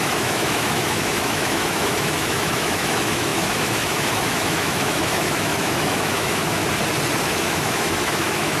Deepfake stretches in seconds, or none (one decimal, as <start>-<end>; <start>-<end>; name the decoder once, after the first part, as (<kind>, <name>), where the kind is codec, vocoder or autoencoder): 0.0-6.6 (autoencoder, DAC-VAE); 7.2-8.6